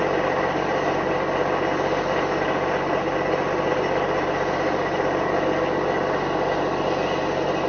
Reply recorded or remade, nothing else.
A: recorded